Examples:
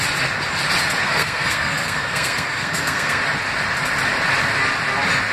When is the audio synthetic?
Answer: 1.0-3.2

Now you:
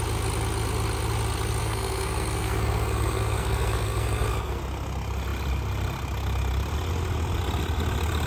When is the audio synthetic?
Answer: 1.6-4.6